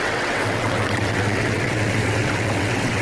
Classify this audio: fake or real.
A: fake